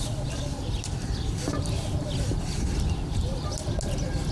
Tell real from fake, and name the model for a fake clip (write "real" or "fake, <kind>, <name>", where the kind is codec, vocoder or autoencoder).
real